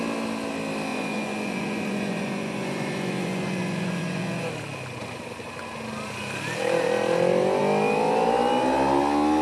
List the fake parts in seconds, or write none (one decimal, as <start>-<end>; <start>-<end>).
0.9-4.5